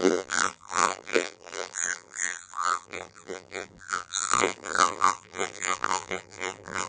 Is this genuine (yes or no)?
no